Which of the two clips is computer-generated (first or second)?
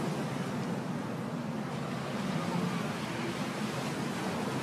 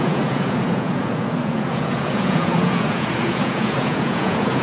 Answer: second